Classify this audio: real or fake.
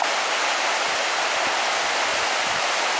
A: real